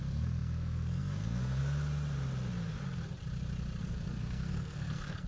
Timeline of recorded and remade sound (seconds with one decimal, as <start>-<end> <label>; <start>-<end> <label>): 0.0-1.6 remade; 1.6-3.8 recorded; 3.8-5.3 remade

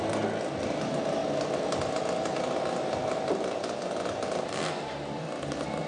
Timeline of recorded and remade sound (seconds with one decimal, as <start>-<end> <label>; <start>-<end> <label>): 0.0-5.9 recorded